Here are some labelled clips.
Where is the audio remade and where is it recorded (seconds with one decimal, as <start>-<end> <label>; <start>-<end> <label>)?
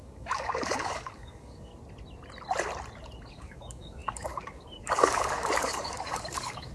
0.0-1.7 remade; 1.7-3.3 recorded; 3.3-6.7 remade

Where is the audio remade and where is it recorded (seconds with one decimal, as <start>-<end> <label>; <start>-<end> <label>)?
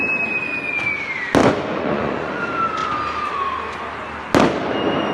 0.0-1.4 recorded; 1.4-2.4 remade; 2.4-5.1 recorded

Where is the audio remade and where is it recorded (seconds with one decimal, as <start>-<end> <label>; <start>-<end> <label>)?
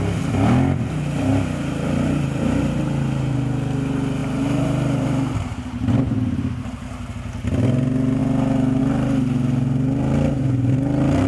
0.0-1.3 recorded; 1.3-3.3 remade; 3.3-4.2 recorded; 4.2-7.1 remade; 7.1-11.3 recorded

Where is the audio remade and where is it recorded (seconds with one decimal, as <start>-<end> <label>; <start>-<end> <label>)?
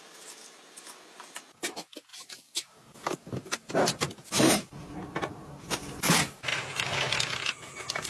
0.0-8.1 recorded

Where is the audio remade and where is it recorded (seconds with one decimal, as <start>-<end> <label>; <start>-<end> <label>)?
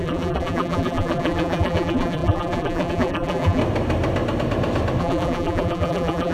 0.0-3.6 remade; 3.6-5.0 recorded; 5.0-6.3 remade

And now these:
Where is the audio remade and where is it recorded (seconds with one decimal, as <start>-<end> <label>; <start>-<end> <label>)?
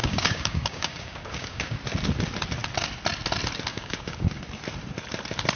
0.0-1.8 remade; 1.8-3.7 recorded; 3.7-4.4 remade; 4.4-5.6 recorded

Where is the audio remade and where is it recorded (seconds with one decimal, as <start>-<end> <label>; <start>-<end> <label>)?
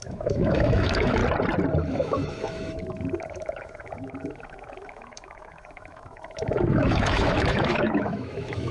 0.0-1.2 remade; 1.2-1.9 recorded; 1.9-8.7 remade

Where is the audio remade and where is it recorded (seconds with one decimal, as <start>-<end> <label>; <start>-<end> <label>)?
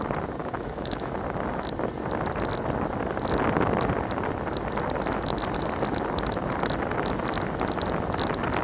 0.0-0.4 recorded; 0.4-1.1 remade; 1.1-8.6 recorded